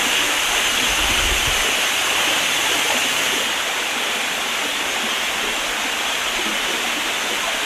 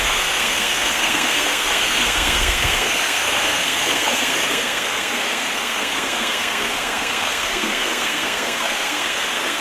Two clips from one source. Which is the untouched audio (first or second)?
first